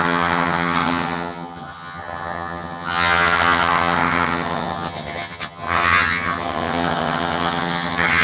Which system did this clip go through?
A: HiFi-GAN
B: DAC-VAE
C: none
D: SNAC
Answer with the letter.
A